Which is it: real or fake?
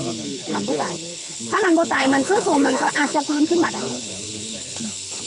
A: fake